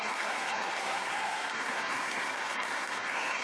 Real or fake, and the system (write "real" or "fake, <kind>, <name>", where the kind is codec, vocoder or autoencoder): fake, codec, SNAC